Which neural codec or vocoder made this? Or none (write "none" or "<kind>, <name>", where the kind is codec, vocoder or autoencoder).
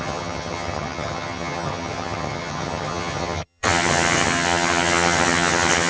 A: vocoder, HiFi-GAN